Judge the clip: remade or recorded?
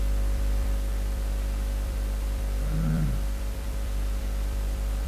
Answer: remade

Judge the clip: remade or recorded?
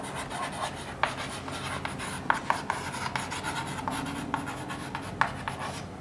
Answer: recorded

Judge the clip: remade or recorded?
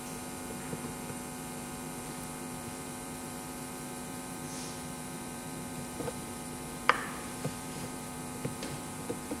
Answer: remade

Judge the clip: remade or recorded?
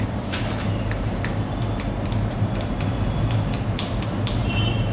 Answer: remade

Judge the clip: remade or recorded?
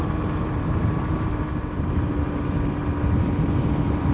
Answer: remade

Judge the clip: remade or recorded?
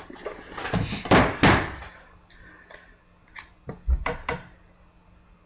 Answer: recorded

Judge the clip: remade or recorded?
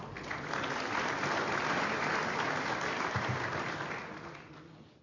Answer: recorded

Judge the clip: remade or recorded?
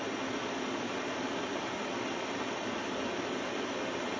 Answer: recorded